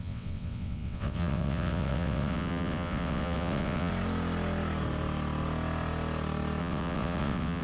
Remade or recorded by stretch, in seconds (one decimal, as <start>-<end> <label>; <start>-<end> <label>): 0.0-3.9 remade; 3.9-6.6 recorded; 6.6-7.6 remade